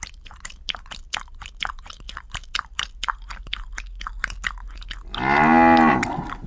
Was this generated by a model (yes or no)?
no